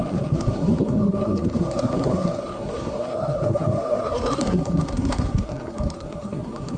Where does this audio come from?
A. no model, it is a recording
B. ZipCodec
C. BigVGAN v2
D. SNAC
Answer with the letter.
D